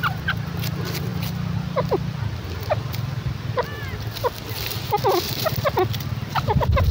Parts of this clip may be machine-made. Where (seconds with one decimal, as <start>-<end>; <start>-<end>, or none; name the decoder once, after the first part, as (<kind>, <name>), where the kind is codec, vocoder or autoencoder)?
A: none